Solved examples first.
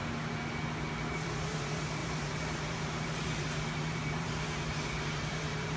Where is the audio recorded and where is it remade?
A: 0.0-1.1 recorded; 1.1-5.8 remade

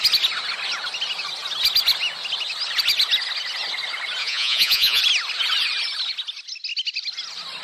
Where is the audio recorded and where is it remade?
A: 0.0-4.2 recorded; 4.2-5.0 remade; 5.0-7.6 recorded

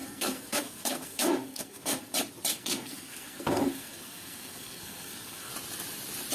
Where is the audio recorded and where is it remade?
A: 0.0-2.1 remade; 2.1-2.5 recorded; 2.5-5.5 remade; 5.5-6.3 recorded

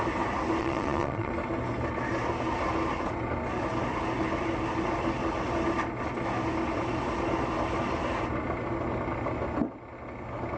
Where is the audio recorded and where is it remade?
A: 0.0-0.6 recorded; 0.6-1.3 remade; 1.3-10.6 recorded